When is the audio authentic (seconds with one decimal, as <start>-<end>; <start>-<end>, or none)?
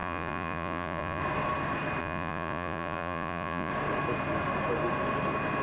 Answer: 1.2-2.0; 3.7-5.6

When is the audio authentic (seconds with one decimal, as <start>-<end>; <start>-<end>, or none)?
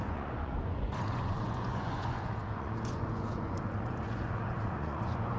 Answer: none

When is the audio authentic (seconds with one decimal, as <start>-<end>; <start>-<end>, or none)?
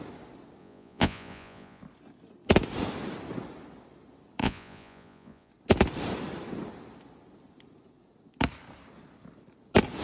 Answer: 0.0-0.6; 1.8-4.4; 5.5-10.0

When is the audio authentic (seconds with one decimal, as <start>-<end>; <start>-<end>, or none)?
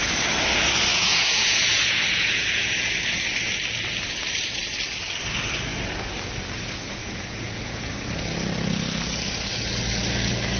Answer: 0.0-0.9; 2.9-7.0; 7.9-10.6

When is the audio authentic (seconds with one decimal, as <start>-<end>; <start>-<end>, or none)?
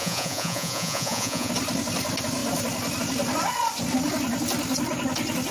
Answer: 1.5-5.5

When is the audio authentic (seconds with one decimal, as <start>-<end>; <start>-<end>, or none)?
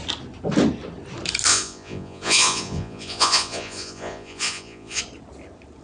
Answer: 0.0-1.5; 5.0-5.8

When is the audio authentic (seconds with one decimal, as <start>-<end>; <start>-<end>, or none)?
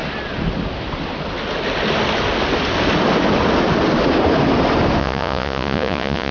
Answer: 0.0-5.0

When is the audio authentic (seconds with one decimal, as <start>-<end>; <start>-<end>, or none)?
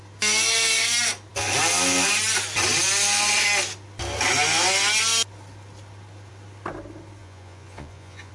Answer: 0.0-7.2